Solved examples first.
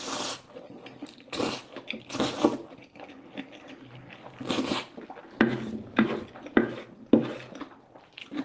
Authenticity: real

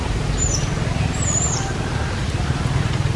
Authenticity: fake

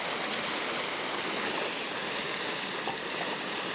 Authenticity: real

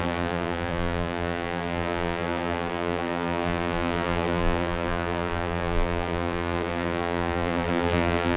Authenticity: fake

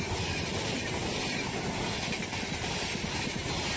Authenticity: fake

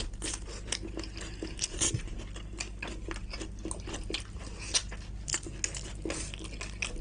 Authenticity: real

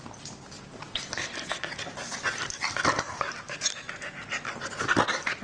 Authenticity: real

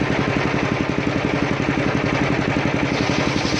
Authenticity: real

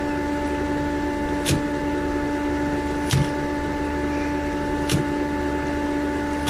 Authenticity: real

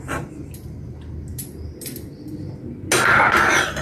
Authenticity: real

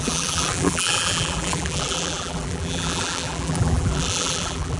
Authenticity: fake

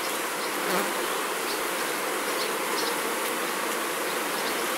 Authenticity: fake